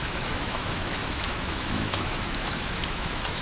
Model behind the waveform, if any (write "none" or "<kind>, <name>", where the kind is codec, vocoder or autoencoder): autoencoder, DAC-VAE